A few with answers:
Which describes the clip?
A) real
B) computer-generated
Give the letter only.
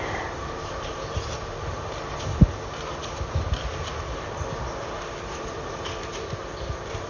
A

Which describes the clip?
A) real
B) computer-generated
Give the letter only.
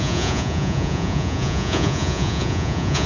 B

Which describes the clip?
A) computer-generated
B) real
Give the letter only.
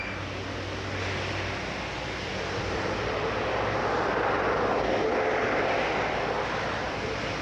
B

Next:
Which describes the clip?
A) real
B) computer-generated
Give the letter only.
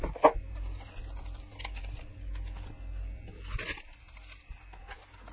A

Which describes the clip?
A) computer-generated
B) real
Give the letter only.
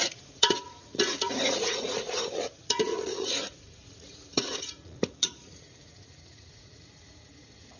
A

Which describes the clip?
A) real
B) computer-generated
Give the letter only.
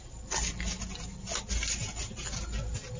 A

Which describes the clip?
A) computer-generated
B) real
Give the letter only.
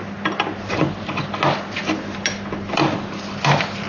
B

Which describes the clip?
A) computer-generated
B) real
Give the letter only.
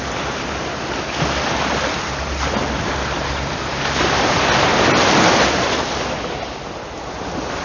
B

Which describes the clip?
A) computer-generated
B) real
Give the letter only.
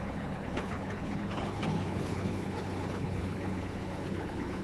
A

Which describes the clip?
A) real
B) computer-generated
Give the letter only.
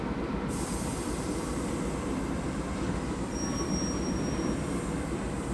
A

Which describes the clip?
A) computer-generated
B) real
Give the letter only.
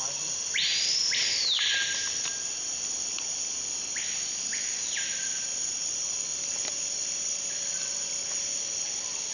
B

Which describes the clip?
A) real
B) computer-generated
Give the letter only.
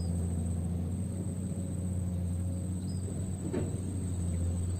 A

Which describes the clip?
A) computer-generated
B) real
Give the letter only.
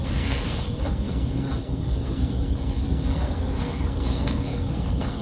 A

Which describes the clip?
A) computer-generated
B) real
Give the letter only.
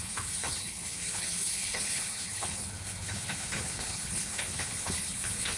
A